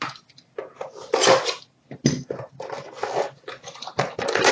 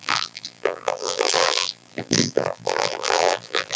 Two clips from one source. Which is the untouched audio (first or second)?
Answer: first